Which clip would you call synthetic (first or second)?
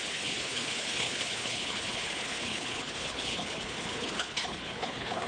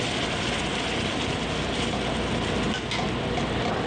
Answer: first